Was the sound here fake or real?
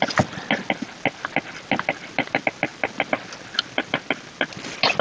real